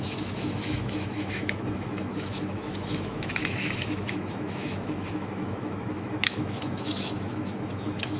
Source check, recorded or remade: remade